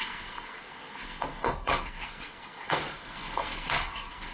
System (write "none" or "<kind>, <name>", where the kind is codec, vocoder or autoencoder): codec, SNAC